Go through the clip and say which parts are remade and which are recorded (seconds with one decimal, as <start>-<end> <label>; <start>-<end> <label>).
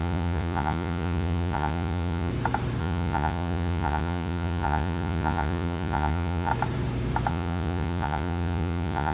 0.0-2.3 remade; 2.3-2.8 recorded; 2.8-6.5 remade; 6.5-7.3 recorded; 7.3-9.1 remade